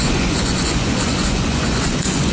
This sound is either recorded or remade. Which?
remade